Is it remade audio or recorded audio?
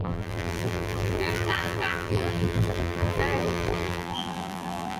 remade